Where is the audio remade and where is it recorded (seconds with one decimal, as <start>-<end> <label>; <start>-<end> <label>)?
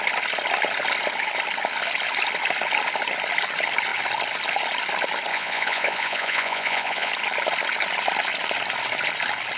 0.0-5.3 recorded; 5.3-7.1 remade; 7.1-9.6 recorded